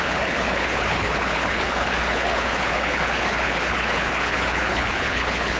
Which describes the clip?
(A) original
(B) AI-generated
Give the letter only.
B